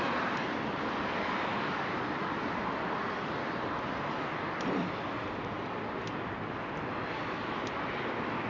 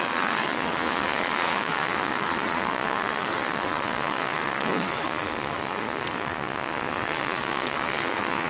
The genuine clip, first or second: first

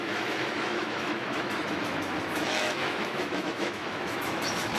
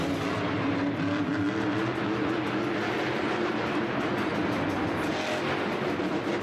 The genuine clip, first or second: second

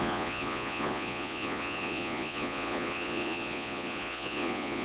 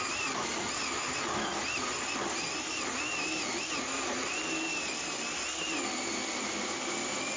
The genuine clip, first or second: second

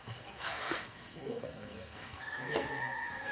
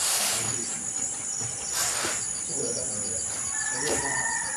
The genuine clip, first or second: second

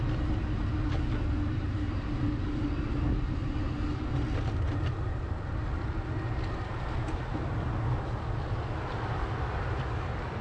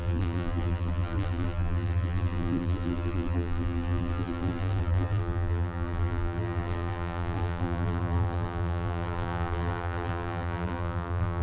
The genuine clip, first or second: first